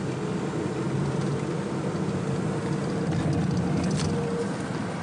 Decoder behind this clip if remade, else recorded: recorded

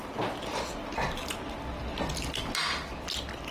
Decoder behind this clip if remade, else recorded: recorded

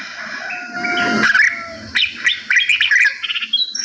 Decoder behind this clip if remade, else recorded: recorded